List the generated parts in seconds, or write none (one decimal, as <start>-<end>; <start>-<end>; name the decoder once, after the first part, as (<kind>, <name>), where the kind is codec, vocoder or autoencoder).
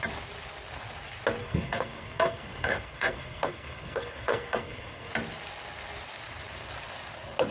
1.4-5.1 (codec, SNAC)